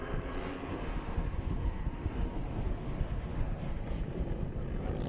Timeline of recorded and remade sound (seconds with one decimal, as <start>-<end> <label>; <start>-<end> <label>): 0.0-0.7 recorded; 0.7-3.8 remade; 3.8-5.1 recorded